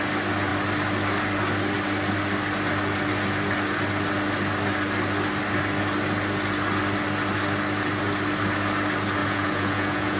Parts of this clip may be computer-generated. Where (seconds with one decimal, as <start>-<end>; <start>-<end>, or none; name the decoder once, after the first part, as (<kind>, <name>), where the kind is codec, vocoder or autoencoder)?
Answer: 9.2-10.2 (vocoder, Vocos)